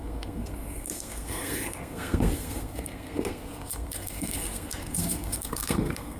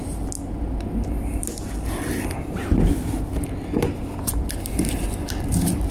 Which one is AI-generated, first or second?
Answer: first